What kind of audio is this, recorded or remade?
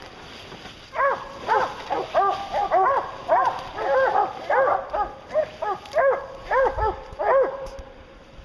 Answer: recorded